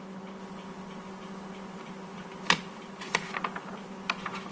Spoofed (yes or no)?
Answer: no